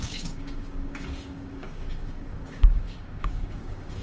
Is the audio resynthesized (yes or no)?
yes